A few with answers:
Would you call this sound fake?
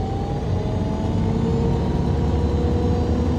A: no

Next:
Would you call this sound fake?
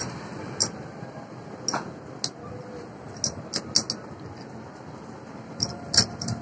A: no